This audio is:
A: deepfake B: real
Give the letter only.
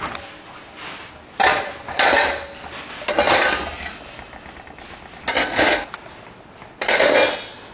B